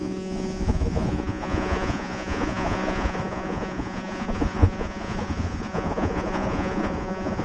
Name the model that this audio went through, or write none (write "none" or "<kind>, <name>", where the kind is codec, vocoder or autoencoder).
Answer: vocoder, Vocos